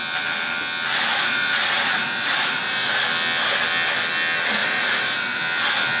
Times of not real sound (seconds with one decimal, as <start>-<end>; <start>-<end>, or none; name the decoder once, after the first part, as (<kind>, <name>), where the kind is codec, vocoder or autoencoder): 1.1-3.0 (vocoder, Vocos); 4.6-5.4